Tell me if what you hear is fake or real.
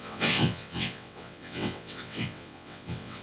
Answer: fake